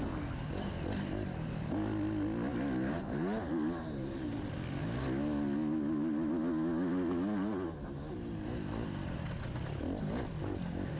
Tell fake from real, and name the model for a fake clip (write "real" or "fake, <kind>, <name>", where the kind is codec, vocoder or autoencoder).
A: real